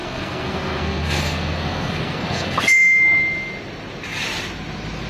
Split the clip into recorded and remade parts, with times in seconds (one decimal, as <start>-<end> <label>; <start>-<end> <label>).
0.0-3.0 remade; 3.0-5.1 recorded